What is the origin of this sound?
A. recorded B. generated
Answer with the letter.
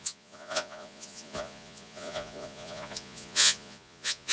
B